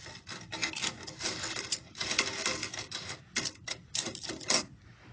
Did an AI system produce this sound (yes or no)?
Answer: no